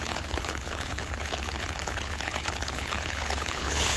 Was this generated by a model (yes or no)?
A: yes